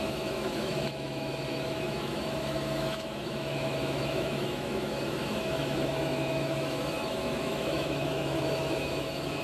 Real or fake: fake